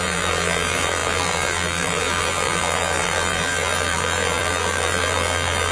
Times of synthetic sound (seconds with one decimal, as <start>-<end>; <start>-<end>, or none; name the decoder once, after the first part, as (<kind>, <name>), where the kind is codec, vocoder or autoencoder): 0.0-5.7 (vocoder, BigVGAN v2)